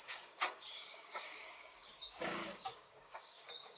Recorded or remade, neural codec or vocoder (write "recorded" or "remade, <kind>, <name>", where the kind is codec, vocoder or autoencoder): remade, codec, DAC